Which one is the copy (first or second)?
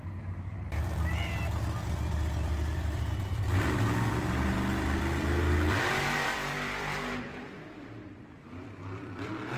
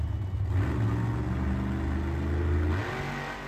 first